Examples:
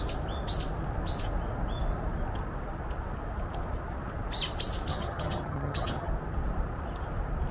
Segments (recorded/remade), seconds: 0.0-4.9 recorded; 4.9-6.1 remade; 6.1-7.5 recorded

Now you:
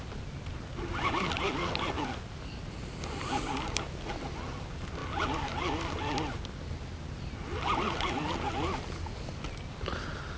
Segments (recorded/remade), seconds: 0.0-10.4 recorded

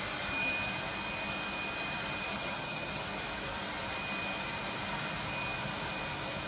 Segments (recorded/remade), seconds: 0.0-2.3 recorded; 2.3-3.0 remade; 3.0-6.5 recorded

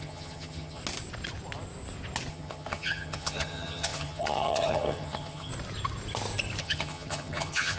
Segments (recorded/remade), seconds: 0.0-0.8 remade; 0.8-2.3 recorded; 2.3-5.5 remade; 5.5-6.6 recorded; 6.6-7.8 remade

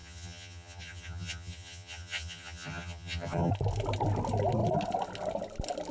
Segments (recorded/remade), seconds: 0.0-3.5 remade; 3.5-5.9 recorded

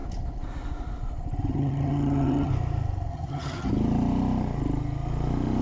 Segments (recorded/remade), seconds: 0.0-1.5 recorded; 1.5-2.5 remade; 2.5-3.1 recorded; 3.1-3.7 remade; 3.7-5.6 recorded

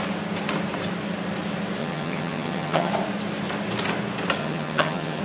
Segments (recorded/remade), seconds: 0.0-1.8 recorded; 1.8-2.9 remade; 2.9-4.4 recorded; 4.4-5.2 remade

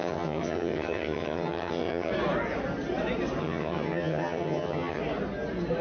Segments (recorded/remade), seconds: 0.0-2.1 remade; 2.1-3.4 recorded; 3.4-5.0 remade; 5.0-5.8 recorded